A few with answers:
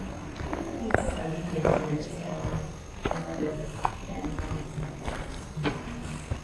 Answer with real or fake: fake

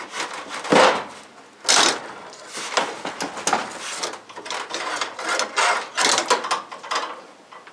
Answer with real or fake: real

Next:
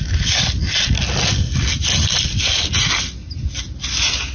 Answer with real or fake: real